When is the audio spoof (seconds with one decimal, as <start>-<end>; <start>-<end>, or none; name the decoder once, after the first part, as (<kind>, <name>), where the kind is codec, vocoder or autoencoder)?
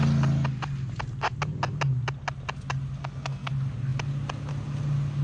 3.0-3.5 (codec, SNAC)